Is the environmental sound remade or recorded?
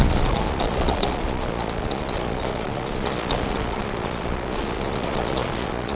remade